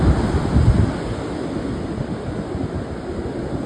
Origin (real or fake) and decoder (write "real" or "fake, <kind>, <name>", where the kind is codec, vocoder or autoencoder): real